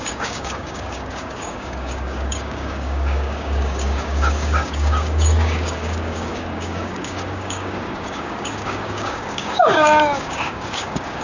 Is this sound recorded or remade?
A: remade